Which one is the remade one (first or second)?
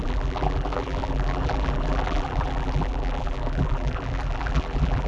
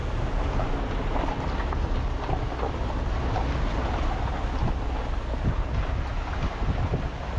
first